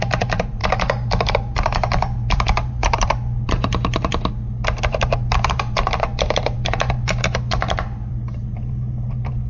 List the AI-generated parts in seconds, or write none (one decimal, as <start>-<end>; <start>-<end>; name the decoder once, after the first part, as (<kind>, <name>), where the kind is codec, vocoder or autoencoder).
0.0-9.5 (vocoder, BigVGAN v2)